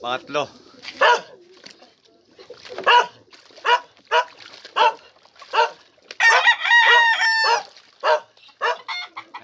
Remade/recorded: recorded